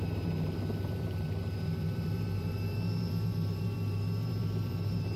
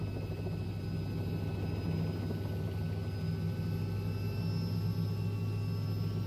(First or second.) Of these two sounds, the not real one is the first